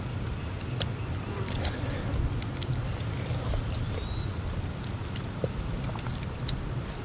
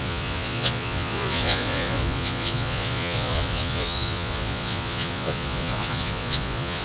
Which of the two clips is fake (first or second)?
second